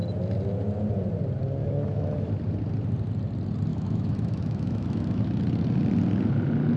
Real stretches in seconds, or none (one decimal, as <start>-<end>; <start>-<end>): 0.0-1.6; 2.3-3.7; 5.4-6.8